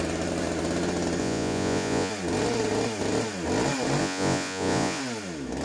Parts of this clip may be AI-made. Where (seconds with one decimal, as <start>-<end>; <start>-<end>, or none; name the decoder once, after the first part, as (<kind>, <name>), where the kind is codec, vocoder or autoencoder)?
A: 1.2-2.1 (vocoder, Vocos); 4.0-5.0

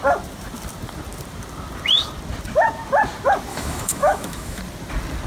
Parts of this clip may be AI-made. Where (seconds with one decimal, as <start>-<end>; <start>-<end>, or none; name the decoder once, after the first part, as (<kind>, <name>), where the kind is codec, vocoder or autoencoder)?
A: 3.5-4.6 (autoencoder, DAC-VAE)

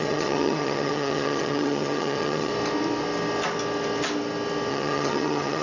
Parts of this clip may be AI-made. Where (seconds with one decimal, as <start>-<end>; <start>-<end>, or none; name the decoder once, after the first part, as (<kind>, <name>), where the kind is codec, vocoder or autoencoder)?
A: 0.0-2.5 (vocoder, HiFi-GAN); 4.7-5.6

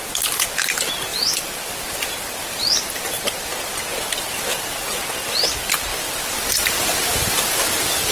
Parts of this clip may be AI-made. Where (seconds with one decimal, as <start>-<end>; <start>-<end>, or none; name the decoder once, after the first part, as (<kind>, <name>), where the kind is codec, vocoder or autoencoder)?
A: 1.1-5.0 (vocoder, BigVGAN v2); 5.9-8.1

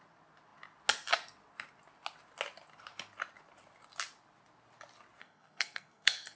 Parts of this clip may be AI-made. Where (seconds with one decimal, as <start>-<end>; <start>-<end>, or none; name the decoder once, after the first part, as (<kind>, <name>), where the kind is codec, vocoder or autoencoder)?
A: 5.2-6.4 (codec, SNAC)

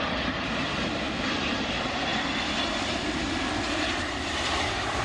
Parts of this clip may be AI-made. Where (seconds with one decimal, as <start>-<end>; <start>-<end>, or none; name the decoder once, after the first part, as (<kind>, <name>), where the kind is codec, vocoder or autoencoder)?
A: 0.0-2.1 (vocoder, BigVGAN v2); 3.7-5.0

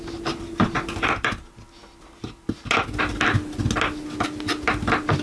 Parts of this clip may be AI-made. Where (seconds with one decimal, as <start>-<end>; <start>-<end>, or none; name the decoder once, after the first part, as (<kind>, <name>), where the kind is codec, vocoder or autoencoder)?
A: none

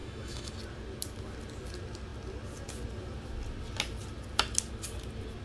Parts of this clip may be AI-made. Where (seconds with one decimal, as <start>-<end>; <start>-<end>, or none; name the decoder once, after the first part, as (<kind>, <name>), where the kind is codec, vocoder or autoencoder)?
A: 0.0-0.5 (autoencoder, DAC-VAE)